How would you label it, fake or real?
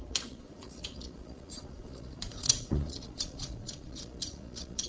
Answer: fake